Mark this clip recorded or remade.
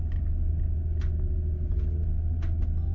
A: recorded